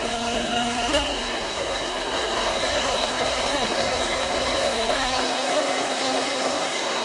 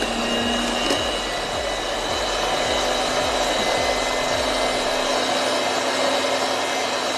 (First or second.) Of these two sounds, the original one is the second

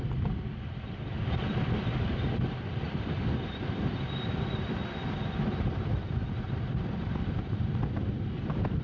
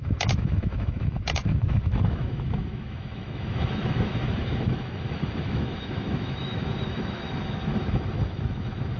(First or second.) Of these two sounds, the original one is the first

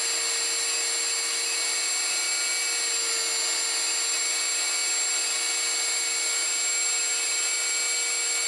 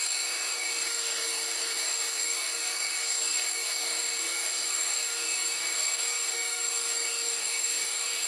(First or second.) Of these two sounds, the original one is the first